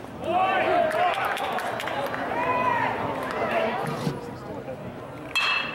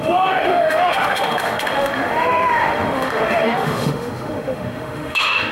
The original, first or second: first